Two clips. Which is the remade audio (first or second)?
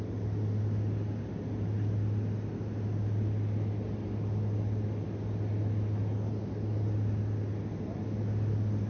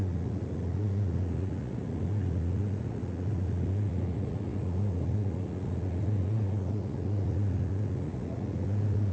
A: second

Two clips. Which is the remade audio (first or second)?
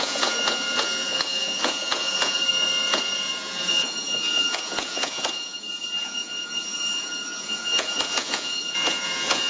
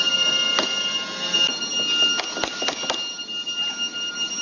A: first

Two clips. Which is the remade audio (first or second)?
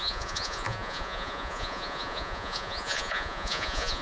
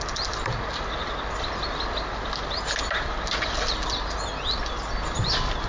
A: first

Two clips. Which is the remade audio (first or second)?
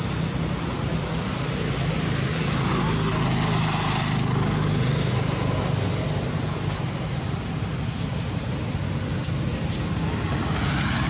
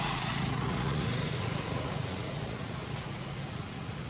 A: second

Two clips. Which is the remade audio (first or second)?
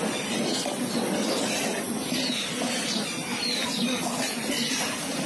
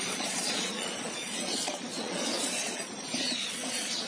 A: second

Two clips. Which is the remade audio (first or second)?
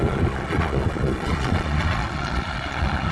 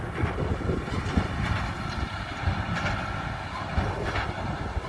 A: first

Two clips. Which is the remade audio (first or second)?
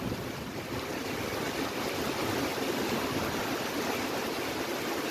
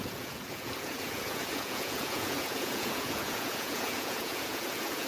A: second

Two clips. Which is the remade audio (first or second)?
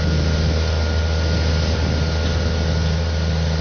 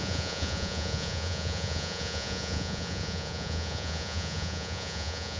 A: second